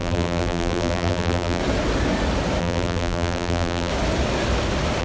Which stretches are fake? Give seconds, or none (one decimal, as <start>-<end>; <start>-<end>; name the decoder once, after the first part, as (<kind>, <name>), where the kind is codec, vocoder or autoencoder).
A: 0.0-1.6 (vocoder, BigVGAN v2); 2.6-3.9